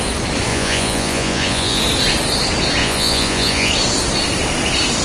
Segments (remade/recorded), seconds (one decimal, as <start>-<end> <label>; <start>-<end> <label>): 0.0-0.5 recorded; 0.5-1.8 remade; 1.8-2.8 recorded; 2.8-3.7 remade; 3.7-5.0 recorded